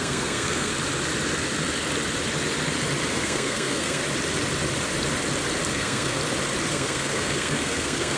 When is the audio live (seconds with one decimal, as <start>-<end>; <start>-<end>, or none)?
0.7-3.1; 4.0-5.7; 6.2-6.7